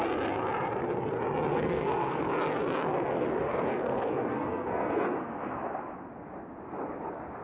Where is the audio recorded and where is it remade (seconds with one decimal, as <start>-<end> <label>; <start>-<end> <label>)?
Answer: 0.0-1.5 recorded; 1.5-2.2 remade; 2.2-3.7 recorded; 3.7-5.6 remade; 5.6-7.4 recorded

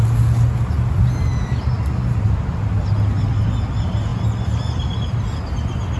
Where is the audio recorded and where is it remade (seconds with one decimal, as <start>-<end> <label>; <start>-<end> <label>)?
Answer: 0.0-6.0 recorded

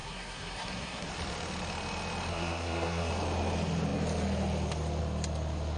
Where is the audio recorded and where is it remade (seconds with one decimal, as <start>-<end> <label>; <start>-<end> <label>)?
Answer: 0.0-1.1 remade; 1.1-2.3 recorded; 2.3-3.1 remade; 3.1-5.8 recorded

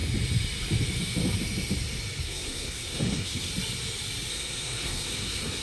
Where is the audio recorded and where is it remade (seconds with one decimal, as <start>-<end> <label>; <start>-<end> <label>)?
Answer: 0.0-2.2 recorded; 2.2-3.5 remade; 3.5-4.3 recorded; 4.3-5.6 remade